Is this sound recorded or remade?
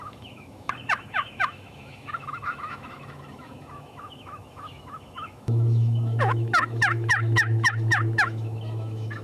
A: remade